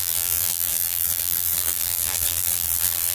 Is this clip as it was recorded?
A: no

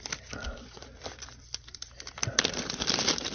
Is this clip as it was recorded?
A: no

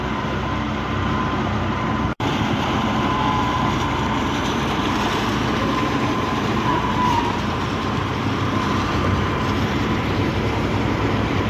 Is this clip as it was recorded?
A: no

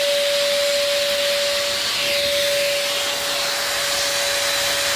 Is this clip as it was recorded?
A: yes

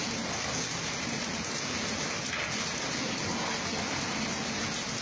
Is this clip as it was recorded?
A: yes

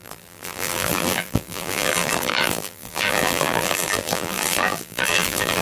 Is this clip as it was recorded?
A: no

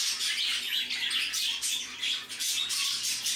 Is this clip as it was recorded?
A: yes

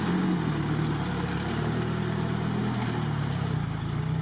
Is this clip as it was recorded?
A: yes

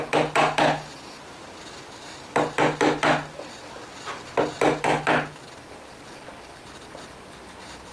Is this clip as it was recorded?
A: yes